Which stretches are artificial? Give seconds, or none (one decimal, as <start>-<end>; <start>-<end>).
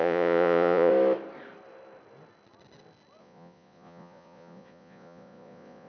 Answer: 0.0-0.9; 3.2-5.9